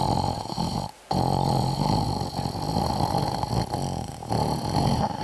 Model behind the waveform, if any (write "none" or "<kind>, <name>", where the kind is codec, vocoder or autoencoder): none